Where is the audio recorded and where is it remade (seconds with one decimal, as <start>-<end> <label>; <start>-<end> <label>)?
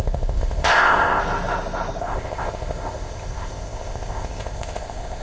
0.0-1.2 remade; 1.2-2.0 recorded; 2.0-5.2 remade